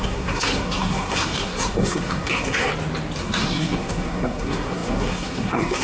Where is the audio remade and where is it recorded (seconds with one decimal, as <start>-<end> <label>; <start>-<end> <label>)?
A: 0.0-2.7 remade; 2.7-3.2 recorded; 3.2-5.8 remade